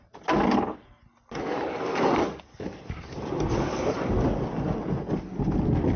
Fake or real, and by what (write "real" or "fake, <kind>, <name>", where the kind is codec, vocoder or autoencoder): real